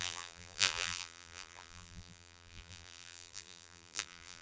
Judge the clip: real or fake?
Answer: fake